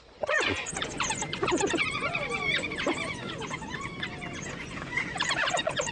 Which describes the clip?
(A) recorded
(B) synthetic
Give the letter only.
B